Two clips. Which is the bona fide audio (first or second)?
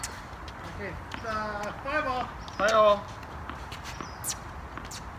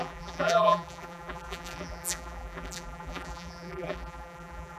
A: first